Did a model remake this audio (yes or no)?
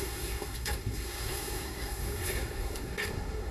yes